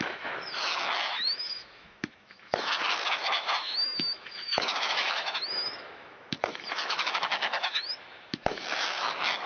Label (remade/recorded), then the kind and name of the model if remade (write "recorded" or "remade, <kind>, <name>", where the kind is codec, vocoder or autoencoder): remade, autoencoder, DAC-VAE